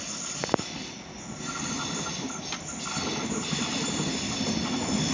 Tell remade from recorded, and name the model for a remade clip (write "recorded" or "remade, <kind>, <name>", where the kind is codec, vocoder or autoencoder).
recorded